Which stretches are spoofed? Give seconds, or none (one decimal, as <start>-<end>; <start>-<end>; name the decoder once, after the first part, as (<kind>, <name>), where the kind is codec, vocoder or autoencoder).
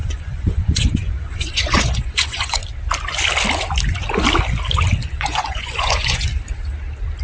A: 0.0-2.6 (vocoder, Vocos); 5.2-6.3